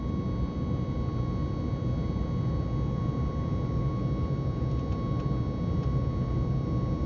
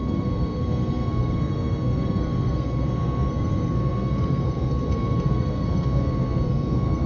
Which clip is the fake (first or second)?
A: second